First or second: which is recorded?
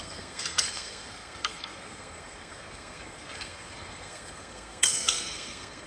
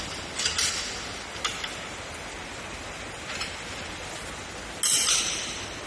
second